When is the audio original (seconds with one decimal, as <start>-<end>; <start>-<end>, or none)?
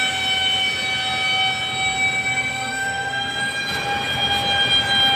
0.0-2.5; 3.4-5.2